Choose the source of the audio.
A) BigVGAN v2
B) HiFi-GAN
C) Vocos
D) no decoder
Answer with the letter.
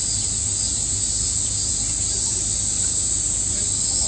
D